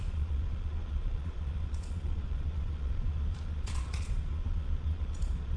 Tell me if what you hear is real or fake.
fake